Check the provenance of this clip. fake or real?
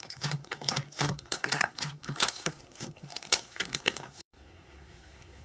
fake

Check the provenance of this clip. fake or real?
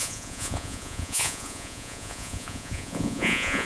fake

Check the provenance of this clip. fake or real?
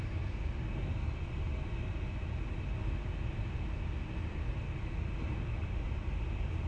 real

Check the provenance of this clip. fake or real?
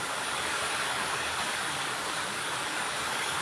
fake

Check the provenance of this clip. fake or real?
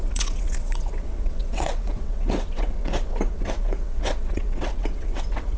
fake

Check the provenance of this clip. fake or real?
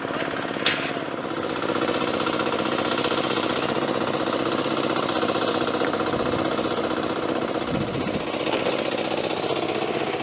real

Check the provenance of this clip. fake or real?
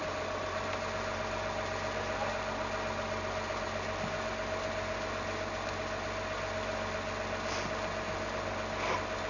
real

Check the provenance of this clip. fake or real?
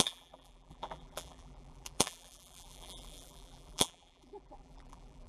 fake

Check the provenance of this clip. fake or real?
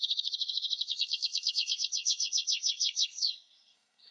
fake